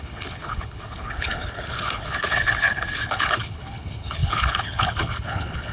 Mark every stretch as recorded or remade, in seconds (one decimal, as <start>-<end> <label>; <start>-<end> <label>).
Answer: 0.0-5.7 remade